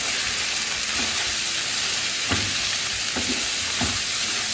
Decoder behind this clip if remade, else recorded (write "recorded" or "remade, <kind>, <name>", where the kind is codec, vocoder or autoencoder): recorded